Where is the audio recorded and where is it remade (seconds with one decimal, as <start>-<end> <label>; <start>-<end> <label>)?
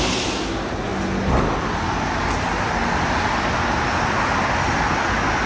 0.0-5.5 recorded